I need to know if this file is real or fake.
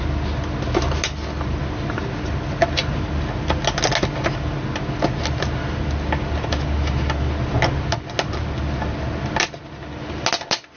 real